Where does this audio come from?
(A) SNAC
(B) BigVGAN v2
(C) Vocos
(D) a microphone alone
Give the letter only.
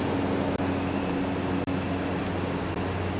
D